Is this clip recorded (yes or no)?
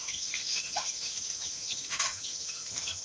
no